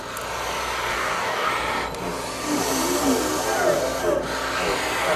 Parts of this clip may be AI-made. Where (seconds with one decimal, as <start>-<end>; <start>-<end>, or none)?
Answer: 0.9-1.5